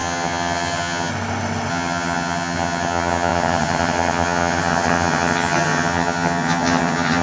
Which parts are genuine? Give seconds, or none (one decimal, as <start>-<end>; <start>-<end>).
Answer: 1.1-1.7